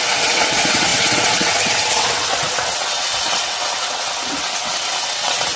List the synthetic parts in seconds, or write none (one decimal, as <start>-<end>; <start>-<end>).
0.0-5.6